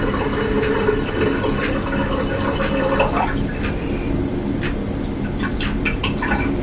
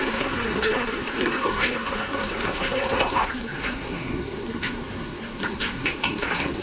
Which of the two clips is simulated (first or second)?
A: second